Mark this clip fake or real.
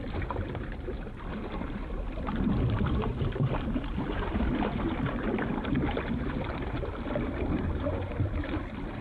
fake